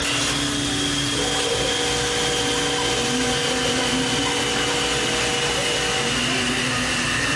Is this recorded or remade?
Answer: recorded